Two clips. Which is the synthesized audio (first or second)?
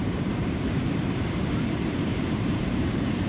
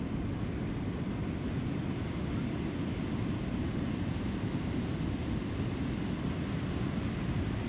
first